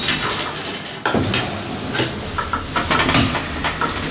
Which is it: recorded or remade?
recorded